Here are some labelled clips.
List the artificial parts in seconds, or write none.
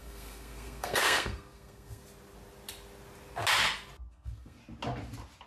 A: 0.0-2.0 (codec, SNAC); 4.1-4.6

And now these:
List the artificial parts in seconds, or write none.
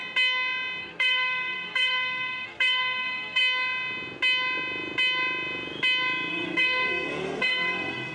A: 0.8-3.4 (codec, SNAC); 6.3-8.1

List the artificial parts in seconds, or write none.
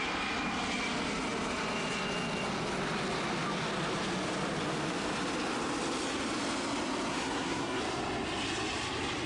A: 7.1-7.8 (codec, SNAC)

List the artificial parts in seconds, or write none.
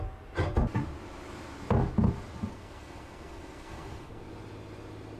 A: 2.5-4.2 (codec, SNAC)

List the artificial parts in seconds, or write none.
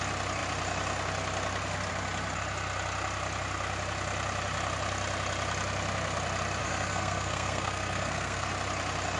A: 6.6-8.5 (codec, SNAC)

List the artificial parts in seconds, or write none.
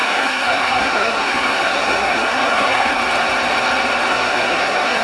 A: 0.0-3.0 (codec, SNAC); 4.1-5.0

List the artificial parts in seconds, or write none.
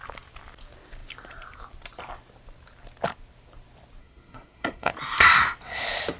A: 4.0-4.9 (codec, SNAC)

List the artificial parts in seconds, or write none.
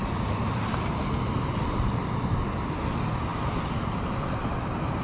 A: none